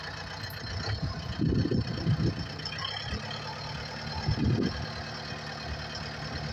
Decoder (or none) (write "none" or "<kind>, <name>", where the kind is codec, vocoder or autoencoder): none